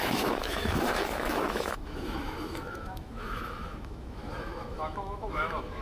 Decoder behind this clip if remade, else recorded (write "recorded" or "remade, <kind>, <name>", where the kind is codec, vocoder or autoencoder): remade, autoencoder, DAC-VAE